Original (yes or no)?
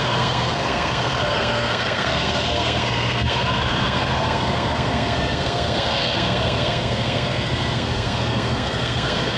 no